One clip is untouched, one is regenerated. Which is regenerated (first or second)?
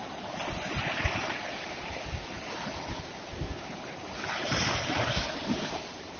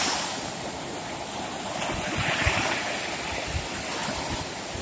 first